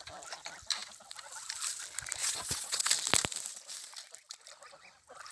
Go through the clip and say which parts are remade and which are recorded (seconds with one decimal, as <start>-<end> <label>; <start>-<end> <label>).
0.0-2.2 recorded; 2.2-2.9 remade; 2.9-5.3 recorded